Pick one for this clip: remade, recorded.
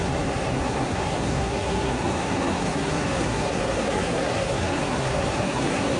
remade